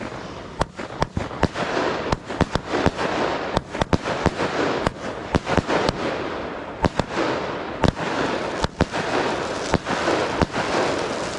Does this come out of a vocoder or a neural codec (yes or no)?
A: no